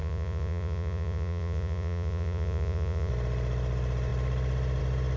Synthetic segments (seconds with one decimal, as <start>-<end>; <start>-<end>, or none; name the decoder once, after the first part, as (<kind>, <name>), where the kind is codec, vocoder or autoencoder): 0.0-3.1 (vocoder, Vocos)